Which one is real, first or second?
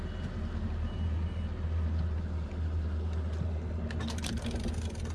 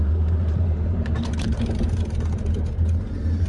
first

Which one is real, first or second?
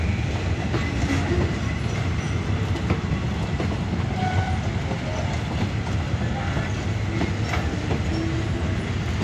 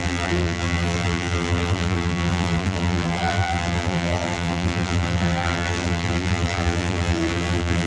first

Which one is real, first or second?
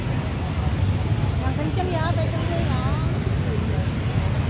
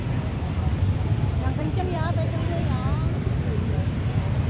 first